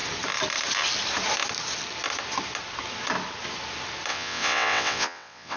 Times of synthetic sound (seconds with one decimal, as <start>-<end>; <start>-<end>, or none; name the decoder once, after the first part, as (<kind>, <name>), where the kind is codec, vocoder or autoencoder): 4.1-5.6 (vocoder, WaveNeXt)